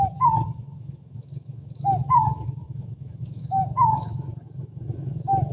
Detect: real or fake fake